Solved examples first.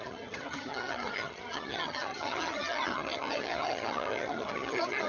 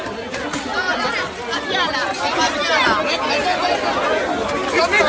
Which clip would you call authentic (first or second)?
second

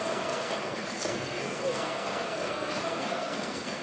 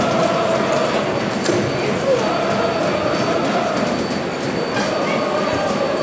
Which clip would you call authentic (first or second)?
second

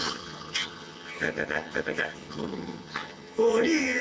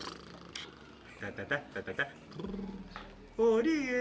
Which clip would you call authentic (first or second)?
second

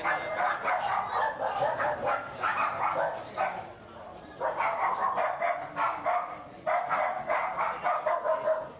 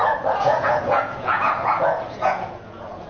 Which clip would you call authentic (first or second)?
first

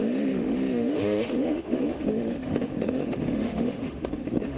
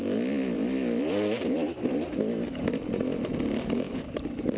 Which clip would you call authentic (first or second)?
second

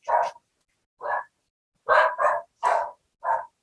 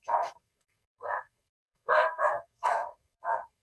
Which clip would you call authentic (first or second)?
first